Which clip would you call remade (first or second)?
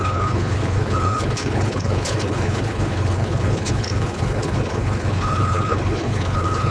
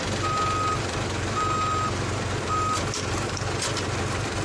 first